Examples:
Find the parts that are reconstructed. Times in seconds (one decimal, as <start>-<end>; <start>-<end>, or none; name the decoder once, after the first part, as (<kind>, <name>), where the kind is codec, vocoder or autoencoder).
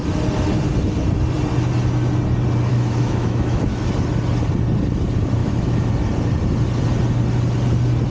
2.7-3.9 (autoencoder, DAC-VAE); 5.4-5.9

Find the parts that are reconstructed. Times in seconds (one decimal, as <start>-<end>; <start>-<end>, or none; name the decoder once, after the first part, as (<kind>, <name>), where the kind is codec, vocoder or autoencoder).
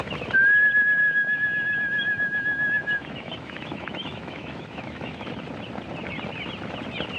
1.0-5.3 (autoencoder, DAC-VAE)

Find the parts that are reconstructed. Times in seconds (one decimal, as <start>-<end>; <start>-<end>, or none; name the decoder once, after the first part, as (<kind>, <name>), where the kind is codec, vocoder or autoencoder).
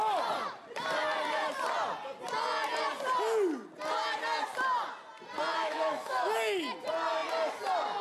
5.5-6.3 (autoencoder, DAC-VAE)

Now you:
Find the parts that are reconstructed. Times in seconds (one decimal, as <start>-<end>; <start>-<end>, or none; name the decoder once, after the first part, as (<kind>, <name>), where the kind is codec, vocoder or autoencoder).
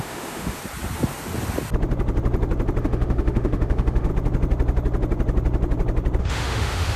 0.0-0.6 (autoencoder, DAC-VAE); 2.8-4.1; 6.2-7.0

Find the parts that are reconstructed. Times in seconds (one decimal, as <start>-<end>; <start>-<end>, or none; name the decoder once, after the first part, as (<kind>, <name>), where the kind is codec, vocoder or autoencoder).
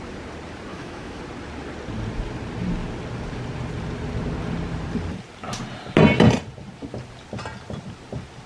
0.7-1.2 (autoencoder, DAC-VAE)